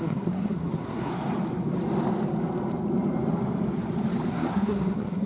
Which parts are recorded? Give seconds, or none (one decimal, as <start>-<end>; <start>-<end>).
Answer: 1.1-4.3